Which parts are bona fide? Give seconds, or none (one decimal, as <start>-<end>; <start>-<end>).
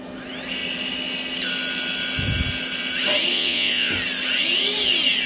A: 0.0-3.3; 3.9-5.2